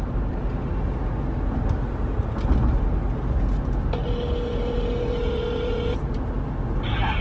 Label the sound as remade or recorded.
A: recorded